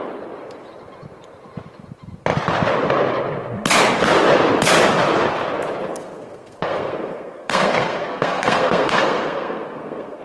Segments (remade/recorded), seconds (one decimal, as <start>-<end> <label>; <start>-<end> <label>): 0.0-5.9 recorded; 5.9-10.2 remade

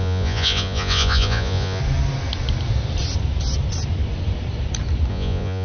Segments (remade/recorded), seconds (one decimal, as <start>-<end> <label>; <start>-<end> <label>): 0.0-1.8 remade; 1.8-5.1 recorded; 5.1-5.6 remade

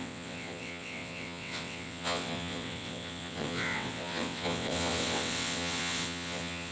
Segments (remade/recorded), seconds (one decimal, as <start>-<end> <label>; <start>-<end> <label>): 0.0-6.7 remade

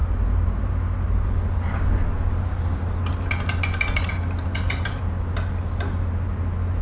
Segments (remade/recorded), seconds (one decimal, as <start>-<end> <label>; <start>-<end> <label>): 0.0-6.8 recorded

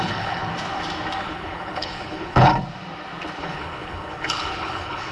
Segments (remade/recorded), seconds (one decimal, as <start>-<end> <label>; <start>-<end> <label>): 0.0-0.5 remade; 0.5-1.2 recorded; 1.2-2.5 remade; 2.5-3.4 recorded; 3.4-5.1 remade

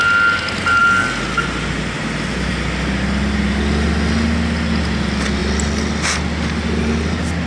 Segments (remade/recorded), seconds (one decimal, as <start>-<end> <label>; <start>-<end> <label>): 0.0-7.5 recorded

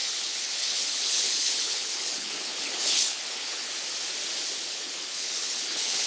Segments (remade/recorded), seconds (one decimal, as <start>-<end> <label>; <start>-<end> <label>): 0.0-3.7 remade; 3.7-4.7 recorded; 4.7-6.1 remade